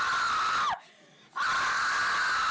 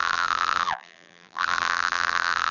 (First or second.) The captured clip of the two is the first